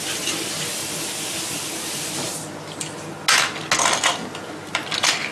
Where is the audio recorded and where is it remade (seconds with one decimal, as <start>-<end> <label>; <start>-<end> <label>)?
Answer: 0.0-5.3 recorded